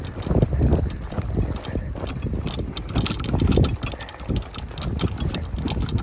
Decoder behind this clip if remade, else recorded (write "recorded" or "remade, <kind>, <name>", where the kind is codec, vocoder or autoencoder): recorded